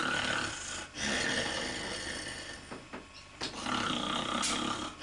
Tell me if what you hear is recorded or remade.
recorded